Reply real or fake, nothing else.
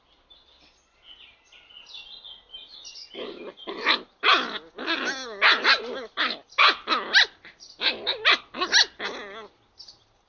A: real